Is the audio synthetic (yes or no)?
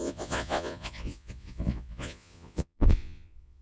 yes